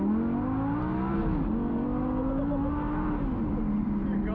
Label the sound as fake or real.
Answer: real